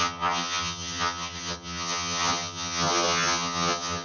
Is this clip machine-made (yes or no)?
yes